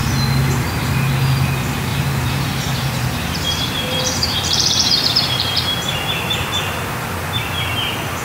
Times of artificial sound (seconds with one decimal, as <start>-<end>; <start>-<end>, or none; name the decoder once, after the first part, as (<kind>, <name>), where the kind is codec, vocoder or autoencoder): 1.9-6.5 (vocoder, BigVGAN v2)